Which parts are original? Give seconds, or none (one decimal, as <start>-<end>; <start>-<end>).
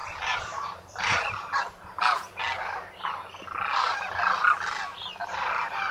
2.3-5.2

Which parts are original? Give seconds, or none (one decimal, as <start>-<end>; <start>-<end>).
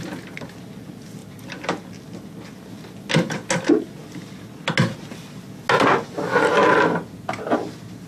0.0-8.1